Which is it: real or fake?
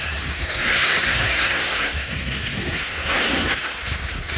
fake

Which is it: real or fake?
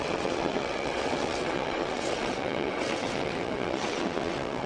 fake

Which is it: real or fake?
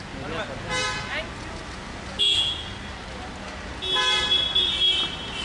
real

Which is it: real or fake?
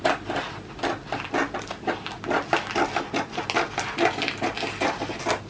real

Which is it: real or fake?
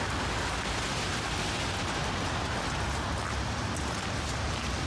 real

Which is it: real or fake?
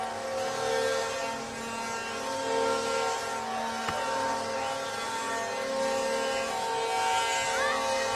real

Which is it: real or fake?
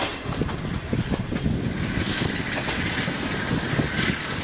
real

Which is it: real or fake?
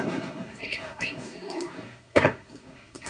fake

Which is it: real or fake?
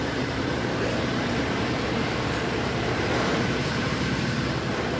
fake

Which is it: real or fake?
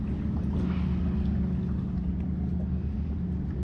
real